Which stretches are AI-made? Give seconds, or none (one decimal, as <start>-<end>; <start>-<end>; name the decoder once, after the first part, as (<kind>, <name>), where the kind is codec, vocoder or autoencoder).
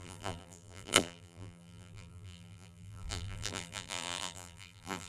0.0-5.1 (vocoder, BigVGAN v2)